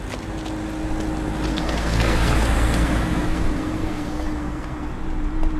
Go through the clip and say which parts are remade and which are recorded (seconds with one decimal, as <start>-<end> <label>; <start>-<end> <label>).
0.0-1.5 recorded; 1.5-4.9 remade; 4.9-5.6 recorded